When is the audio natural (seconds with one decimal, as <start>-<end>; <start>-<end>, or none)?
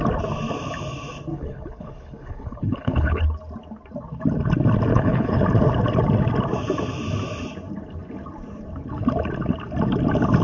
0.0-1.3; 3.2-4.9; 5.4-10.4